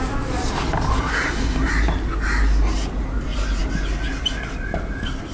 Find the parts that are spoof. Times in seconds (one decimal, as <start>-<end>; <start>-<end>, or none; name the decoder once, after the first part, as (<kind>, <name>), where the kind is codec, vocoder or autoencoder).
1.1-1.7 (codec, SNAC)